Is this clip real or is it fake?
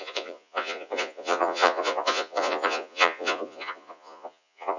fake